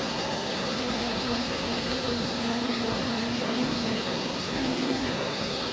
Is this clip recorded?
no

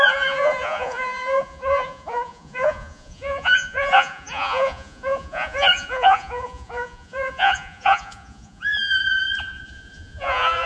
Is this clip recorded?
no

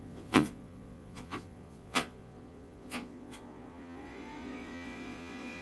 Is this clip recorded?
no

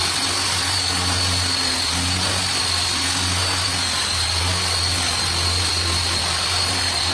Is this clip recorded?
yes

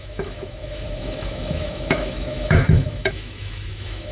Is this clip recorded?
no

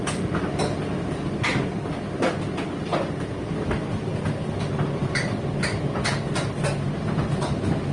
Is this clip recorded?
yes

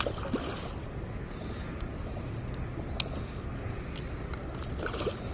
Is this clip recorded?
yes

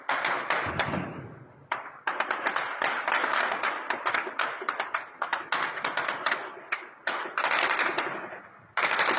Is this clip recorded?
yes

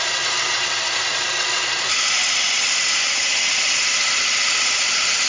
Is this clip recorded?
yes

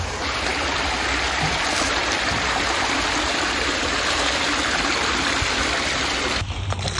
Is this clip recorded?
yes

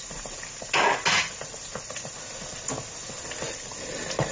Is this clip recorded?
yes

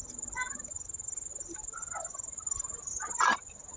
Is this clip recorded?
yes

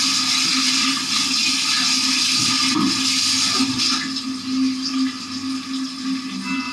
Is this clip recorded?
yes